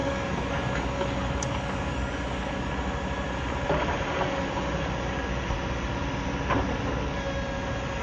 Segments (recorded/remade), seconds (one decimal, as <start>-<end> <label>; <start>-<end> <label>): 0.0-2.7 remade; 2.7-8.0 recorded